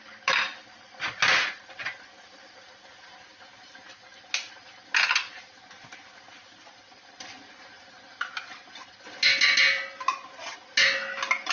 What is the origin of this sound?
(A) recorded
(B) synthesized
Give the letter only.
A